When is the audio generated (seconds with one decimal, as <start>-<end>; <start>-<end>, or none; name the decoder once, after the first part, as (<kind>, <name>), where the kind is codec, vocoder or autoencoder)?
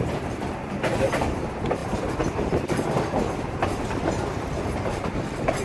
1.8-5.6 (vocoder, BigVGAN v2)